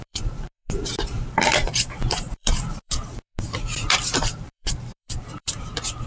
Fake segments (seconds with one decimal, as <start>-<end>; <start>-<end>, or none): 0.0-6.1